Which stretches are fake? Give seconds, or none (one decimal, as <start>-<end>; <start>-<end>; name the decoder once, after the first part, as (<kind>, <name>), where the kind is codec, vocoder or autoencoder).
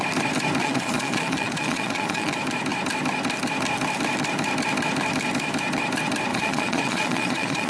0.6-2.3 (vocoder, Vocos); 6.3-7.7